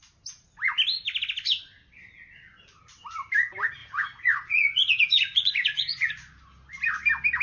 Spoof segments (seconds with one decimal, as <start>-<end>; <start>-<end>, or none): 3.8-6.1